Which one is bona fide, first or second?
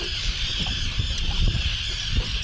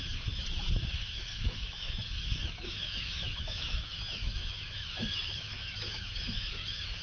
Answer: first